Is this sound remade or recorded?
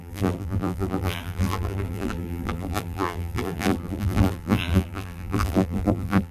remade